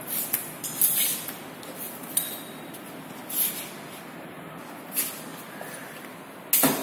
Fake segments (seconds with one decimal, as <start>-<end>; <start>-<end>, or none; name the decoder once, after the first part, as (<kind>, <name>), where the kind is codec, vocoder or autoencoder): none